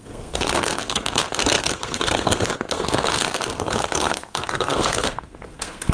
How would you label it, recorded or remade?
remade